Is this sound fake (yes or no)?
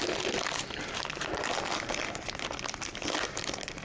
no